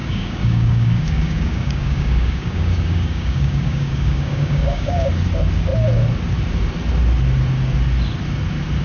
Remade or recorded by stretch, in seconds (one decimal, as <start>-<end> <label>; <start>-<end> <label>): 0.0-5.1 remade; 5.1-8.8 recorded